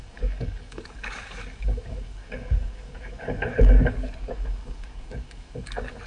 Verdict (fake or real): fake